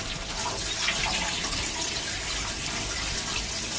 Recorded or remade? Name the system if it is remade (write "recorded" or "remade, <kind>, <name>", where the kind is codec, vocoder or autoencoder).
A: recorded